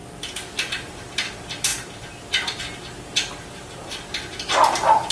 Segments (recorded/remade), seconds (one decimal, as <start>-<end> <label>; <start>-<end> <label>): 0.0-5.1 recorded